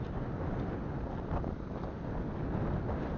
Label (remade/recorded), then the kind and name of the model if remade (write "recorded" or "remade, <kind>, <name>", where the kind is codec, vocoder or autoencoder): recorded